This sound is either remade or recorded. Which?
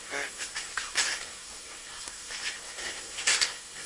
remade